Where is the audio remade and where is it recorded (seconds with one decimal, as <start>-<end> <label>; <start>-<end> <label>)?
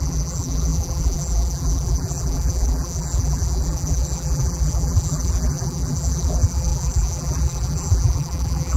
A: 0.0-8.8 remade